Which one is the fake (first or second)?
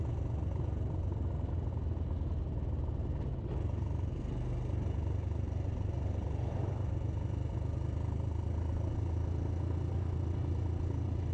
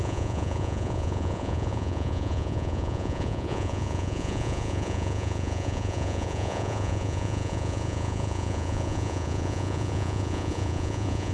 second